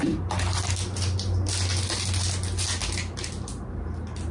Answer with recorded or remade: recorded